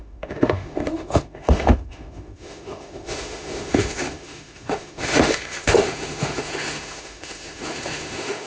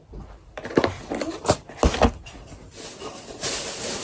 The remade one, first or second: first